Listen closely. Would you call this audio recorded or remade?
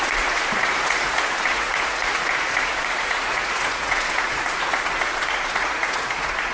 remade